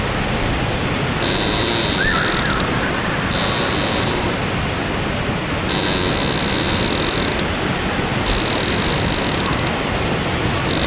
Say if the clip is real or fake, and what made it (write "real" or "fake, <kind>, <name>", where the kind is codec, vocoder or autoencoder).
real